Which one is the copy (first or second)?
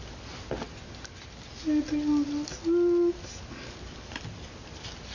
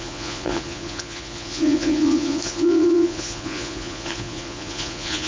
second